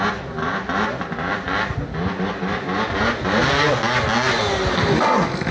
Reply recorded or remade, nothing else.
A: recorded